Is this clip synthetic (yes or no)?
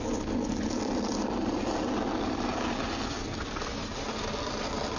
no